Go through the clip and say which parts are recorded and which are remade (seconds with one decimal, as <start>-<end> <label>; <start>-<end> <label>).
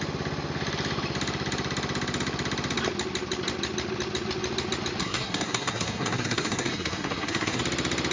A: 0.0-5.0 recorded; 5.0-7.6 remade; 7.6-8.1 recorded